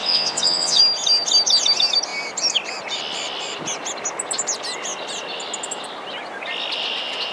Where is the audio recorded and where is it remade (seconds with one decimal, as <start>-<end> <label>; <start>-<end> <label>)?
0.0-0.8 remade; 0.8-7.3 recorded

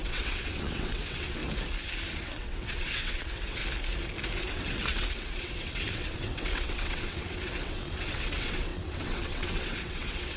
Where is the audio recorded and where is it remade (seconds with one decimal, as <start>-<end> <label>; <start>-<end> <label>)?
0.0-1.4 remade; 1.4-2.1 recorded; 2.1-3.6 remade; 3.6-4.4 recorded; 4.4-10.4 remade

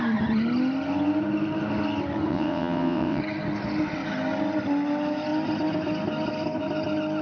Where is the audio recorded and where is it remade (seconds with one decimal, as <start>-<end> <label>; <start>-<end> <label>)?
0.0-2.3 recorded; 2.3-3.2 remade; 3.2-7.2 recorded

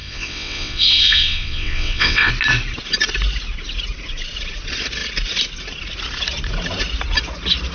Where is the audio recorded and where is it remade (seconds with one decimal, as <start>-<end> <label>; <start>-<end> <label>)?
0.0-2.3 remade; 2.3-7.7 recorded

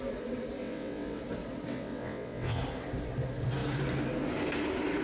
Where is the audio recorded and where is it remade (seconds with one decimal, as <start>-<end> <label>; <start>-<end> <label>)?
0.0-0.6 recorded; 0.6-1.2 remade; 1.2-1.7 recorded; 1.7-2.6 remade; 2.6-5.0 recorded

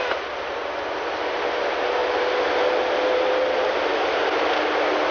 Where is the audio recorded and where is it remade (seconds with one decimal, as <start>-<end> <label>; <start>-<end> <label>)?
0.0-5.1 recorded

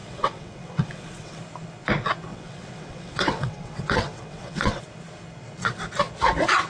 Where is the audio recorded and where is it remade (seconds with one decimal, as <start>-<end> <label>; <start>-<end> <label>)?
0.0-1.4 remade; 1.4-2.3 recorded; 2.3-4.8 remade; 4.8-6.7 recorded

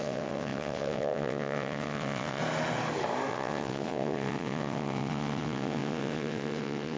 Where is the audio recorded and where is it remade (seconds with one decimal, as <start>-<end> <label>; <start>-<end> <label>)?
0.0-2.4 remade; 2.4-3.3 recorded; 3.3-7.0 remade